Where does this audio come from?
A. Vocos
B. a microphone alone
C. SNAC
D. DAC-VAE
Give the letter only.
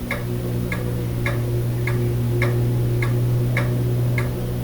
B